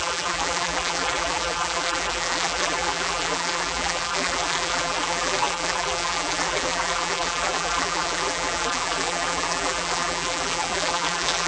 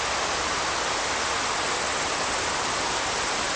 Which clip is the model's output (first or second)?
first